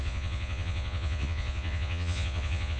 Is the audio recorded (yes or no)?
no